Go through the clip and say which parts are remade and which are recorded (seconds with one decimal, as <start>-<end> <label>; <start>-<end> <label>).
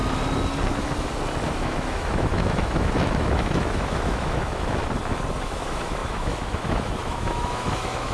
0.0-1.5 recorded; 1.5-4.8 remade; 4.8-5.4 recorded; 5.4-8.1 remade